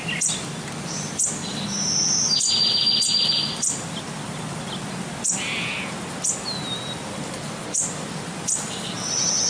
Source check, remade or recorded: recorded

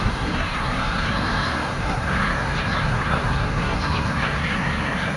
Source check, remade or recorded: remade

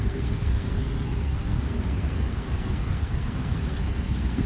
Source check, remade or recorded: remade